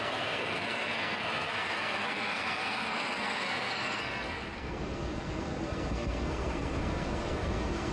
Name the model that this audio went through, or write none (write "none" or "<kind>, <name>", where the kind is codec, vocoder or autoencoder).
codec, SNAC